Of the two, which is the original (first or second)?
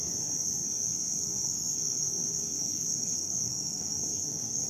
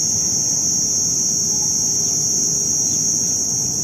second